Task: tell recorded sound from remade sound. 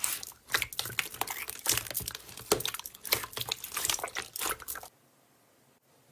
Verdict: recorded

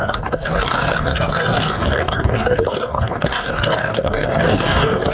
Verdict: remade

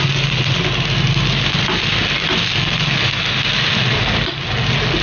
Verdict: recorded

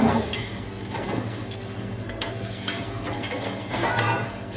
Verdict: remade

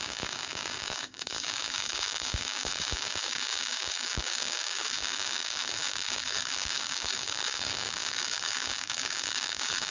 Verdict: remade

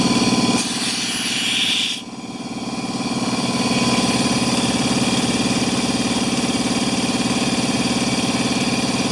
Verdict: recorded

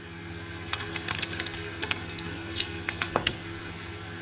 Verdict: remade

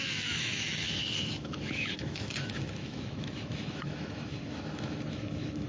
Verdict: remade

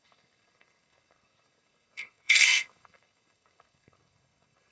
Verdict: remade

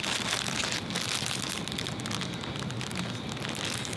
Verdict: recorded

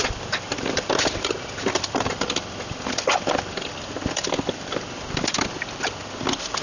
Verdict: remade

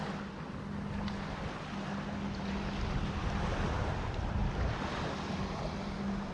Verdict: recorded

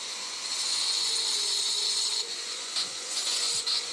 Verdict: remade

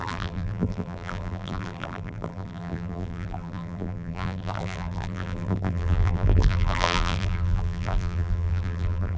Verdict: remade